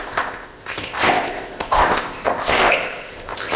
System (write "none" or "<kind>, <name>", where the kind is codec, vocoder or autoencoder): codec, ZipCodec